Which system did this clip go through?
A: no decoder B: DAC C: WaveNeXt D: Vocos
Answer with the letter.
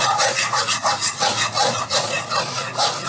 D